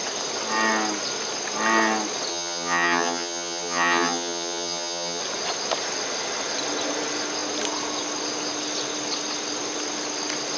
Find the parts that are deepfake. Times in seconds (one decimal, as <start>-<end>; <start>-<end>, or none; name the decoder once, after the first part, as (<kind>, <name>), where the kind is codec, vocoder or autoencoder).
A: 2.3-5.2 (vocoder, HiFi-GAN)